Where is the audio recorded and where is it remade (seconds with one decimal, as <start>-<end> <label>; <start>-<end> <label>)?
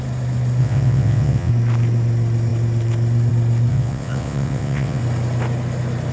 0.0-0.6 recorded; 0.6-1.5 remade; 1.5-3.7 recorded; 3.7-5.0 remade; 5.0-6.1 recorded